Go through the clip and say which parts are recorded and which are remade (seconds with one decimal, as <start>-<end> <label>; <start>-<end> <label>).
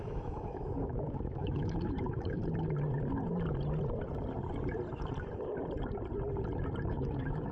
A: 0.0-2.4 remade; 2.4-6.9 recorded; 6.9-7.5 remade